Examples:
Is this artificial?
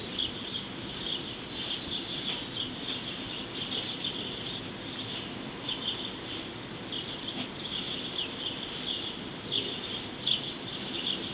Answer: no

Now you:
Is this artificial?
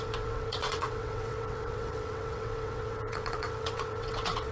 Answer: yes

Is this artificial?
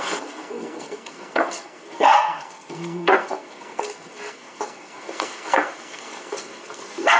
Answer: yes